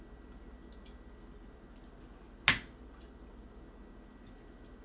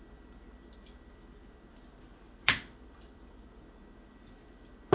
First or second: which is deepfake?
second